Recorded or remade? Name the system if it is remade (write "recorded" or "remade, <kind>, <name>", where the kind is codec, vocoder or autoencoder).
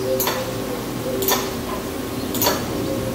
recorded